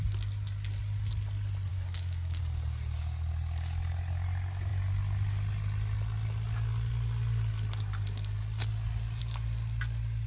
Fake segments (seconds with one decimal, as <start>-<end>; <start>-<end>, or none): 1.7-2.4